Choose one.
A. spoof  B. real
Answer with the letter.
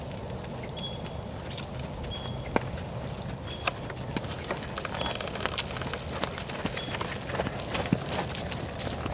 B